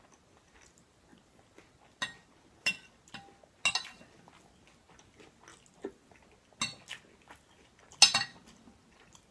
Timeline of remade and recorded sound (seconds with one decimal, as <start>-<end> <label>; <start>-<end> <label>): 0.0-9.3 recorded